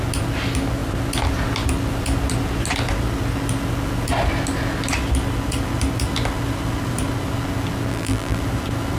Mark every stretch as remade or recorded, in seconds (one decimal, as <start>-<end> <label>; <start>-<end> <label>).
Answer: 0.0-7.9 recorded; 7.9-8.4 remade; 8.4-9.0 recorded